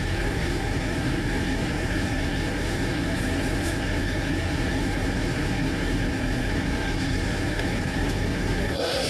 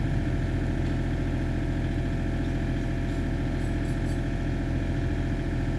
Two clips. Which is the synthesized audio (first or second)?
first